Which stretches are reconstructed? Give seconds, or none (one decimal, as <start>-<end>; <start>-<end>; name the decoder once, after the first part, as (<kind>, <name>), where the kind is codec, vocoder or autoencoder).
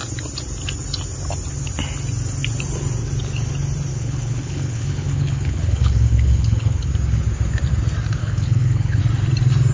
3.9-6.9 (codec, HILCodec); 8.2-9.0